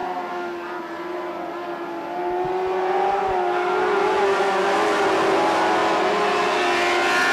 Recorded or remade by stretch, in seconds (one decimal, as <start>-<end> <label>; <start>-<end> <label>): 0.0-7.3 recorded